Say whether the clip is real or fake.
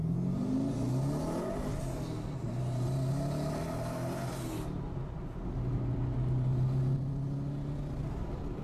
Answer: real